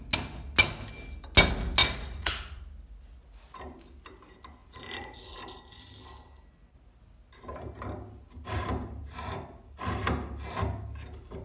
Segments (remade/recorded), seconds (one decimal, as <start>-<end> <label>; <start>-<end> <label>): 0.0-1.8 recorded; 1.8-2.6 remade; 2.6-4.6 recorded; 4.6-5.2 remade; 5.2-11.4 recorded